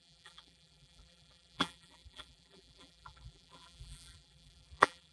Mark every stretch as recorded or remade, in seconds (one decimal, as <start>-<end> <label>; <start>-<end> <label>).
0.0-5.1 remade